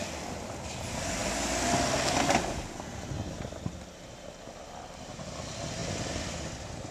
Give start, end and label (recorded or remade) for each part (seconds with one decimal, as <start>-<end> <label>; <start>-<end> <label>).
0.0-6.9 recorded